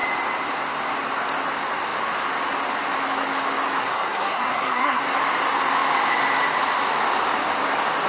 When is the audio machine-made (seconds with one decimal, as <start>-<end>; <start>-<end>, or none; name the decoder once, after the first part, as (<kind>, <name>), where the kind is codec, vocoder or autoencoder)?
3.8-5.0 (codec, SNAC)